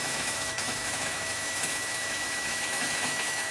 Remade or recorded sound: remade